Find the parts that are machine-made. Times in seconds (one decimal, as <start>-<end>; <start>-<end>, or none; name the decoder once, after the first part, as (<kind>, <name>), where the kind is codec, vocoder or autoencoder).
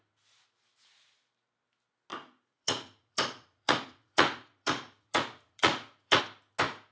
2.1-6.2 (vocoder, Vocos)